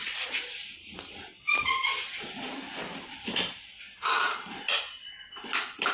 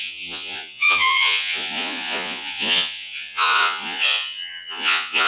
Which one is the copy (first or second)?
second